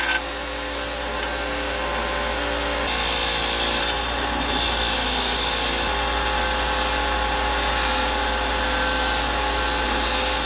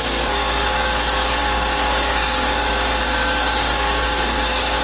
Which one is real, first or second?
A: first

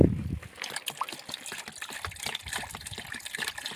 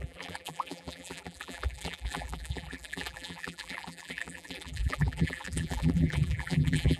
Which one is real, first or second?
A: first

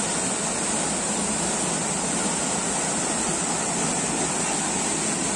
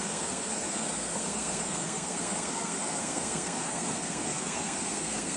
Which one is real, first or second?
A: first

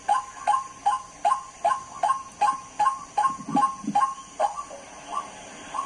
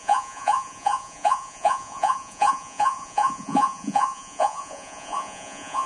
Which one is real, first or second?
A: first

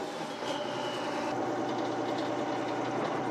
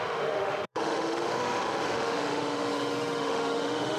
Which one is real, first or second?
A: first